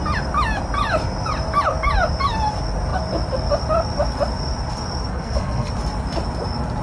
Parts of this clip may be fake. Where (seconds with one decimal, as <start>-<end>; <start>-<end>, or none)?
5.1-5.7